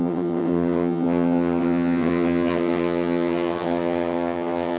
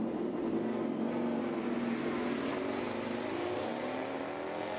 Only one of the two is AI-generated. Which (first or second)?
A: first